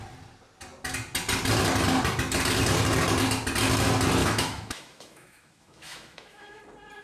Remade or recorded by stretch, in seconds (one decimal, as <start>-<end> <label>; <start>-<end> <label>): 0.0-4.2 recorded; 4.2-6.6 remade; 6.6-7.0 recorded